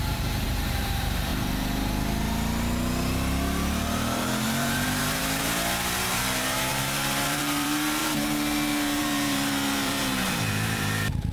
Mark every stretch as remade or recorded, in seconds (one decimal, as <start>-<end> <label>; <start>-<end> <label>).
0.0-1.3 remade; 1.3-3.8 recorded; 3.8-11.3 remade